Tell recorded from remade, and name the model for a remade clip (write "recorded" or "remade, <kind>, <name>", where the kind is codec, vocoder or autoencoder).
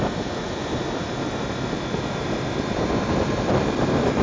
recorded